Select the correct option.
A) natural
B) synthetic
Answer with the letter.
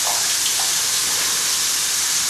B